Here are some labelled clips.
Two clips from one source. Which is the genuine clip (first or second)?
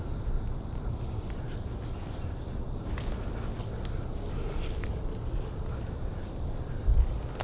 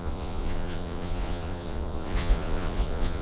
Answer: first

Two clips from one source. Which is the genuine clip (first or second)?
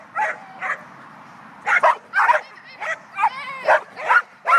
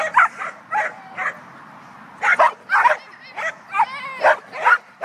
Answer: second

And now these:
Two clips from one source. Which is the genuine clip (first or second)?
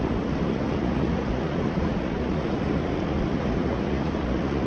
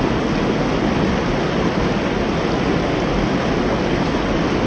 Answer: second